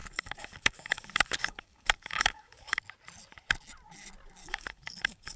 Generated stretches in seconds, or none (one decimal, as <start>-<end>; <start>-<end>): 0.0-2.8; 4.4-5.4